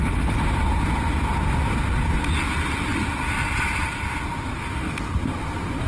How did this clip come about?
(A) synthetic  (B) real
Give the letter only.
B